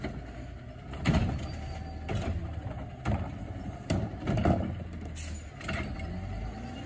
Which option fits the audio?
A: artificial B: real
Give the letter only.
B